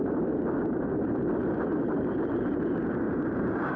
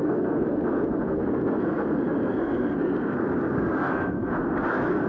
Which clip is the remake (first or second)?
second